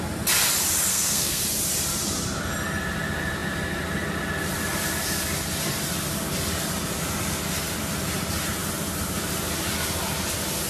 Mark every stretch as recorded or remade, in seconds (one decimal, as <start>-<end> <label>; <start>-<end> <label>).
0.0-0.9 recorded; 0.9-1.4 remade; 1.4-10.7 recorded